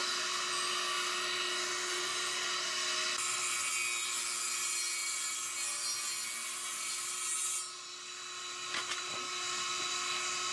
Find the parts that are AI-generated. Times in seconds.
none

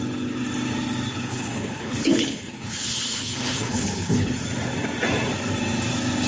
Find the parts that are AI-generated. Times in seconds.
1.1-4.3